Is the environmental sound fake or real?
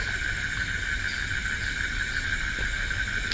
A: real